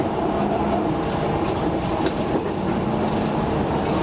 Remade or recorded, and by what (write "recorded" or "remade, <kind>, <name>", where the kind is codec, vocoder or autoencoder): recorded